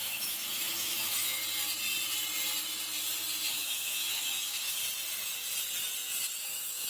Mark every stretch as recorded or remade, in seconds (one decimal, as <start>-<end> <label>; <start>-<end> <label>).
0.0-1.4 remade; 1.4-3.5 recorded; 3.5-4.8 remade; 4.8-6.4 recorded; 6.4-6.9 remade